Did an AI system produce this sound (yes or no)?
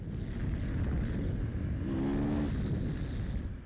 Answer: no